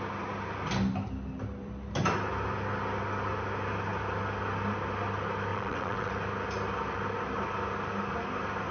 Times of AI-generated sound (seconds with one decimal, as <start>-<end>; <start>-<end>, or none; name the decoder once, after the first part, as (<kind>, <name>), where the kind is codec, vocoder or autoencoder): 5.5-6.1 (vocoder, WaveNeXt)